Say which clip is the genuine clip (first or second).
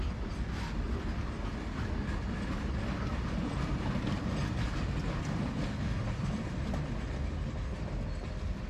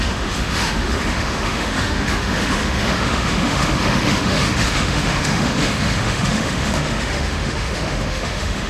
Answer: first